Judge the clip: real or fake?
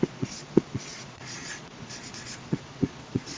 fake